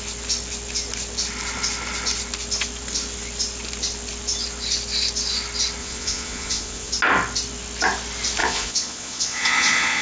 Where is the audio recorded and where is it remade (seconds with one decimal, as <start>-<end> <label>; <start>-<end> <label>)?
0.0-5.8 recorded; 5.8-6.9 remade; 6.9-8.4 recorded; 8.4-10.0 remade